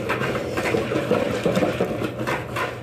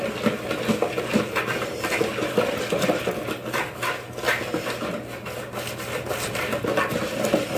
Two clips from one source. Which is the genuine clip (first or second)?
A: second